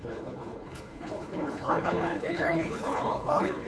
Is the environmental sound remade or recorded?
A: remade